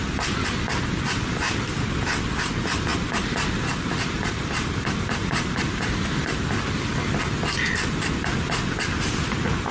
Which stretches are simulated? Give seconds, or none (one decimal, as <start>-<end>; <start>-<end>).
2.9-6.4